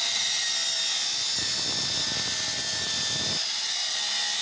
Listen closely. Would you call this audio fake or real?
real